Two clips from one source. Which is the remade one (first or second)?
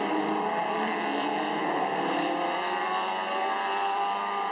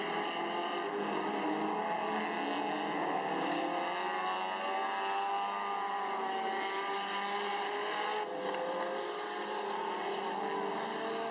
first